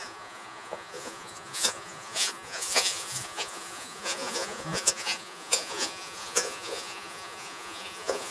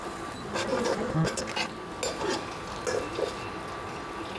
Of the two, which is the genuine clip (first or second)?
second